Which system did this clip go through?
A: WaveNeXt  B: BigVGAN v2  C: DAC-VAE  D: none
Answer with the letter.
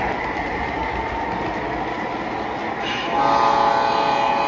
D